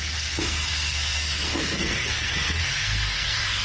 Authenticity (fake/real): fake